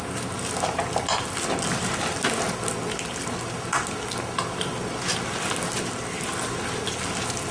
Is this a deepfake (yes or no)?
no